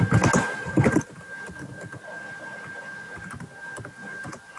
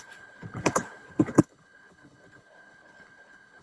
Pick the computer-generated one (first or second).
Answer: second